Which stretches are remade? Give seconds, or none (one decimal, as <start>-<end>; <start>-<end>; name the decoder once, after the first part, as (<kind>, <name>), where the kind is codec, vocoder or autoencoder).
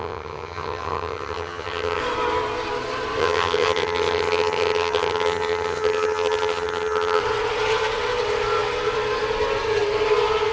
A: 0.0-2.0 (vocoder, HiFi-GAN); 3.2-7.2